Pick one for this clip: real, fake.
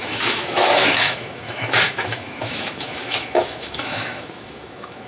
fake